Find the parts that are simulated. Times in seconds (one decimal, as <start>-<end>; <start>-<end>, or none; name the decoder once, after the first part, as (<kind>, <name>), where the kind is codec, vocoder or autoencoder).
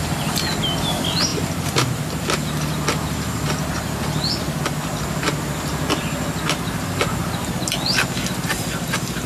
none